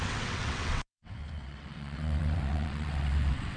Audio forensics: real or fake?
fake